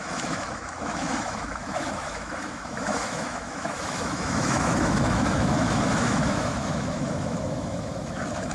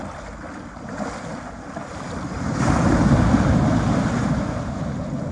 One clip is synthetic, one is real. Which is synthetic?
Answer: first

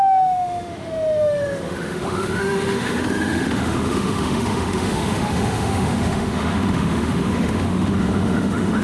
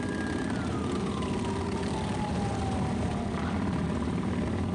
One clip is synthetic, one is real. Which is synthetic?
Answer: first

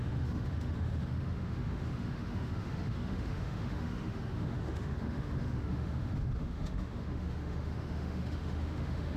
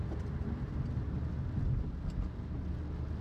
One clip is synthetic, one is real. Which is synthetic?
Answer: first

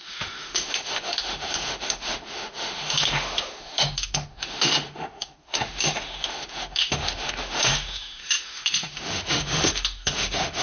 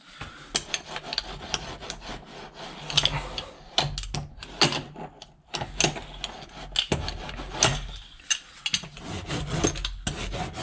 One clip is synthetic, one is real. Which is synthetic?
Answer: first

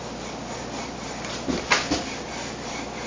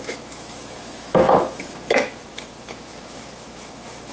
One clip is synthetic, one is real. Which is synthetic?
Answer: second